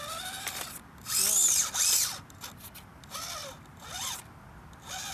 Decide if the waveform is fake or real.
real